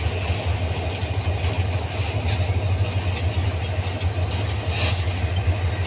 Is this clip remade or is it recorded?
recorded